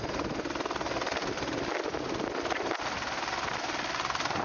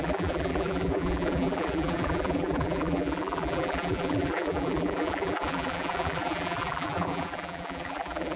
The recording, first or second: first